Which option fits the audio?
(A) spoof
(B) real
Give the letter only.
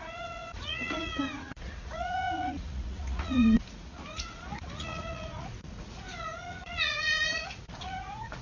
A